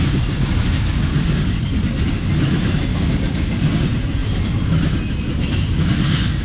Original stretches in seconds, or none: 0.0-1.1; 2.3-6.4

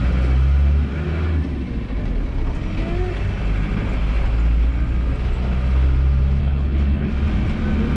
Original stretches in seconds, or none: 0.0-6.4; 7.1-8.0

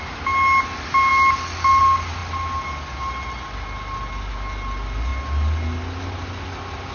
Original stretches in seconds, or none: 0.0-6.9

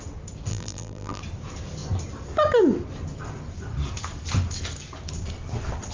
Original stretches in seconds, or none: 0.0-0.5; 1.2-5.9

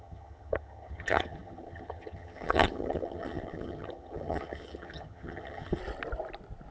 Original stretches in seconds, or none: 5.8-6.7

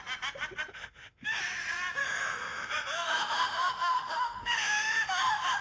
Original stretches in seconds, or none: 0.0-0.7; 1.4-2.0

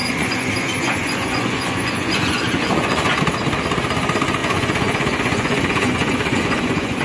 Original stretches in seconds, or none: 3.2-4.4

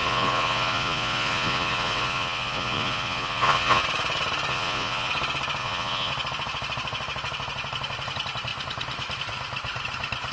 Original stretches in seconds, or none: 3.8-4.5; 5.1-5.6; 6.1-10.3